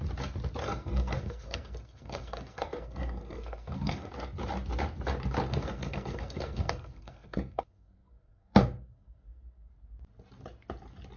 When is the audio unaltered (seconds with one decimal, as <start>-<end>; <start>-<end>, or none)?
0.0-0.6; 4.1-5.5; 9.7-11.2